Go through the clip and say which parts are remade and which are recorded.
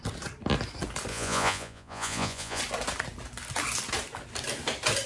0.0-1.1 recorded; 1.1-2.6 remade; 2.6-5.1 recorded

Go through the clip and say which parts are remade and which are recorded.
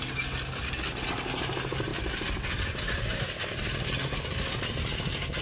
0.0-5.4 recorded